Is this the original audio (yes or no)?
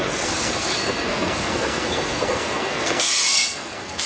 no